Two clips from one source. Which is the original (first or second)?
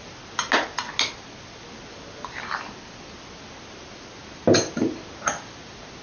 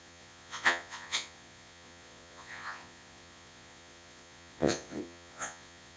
first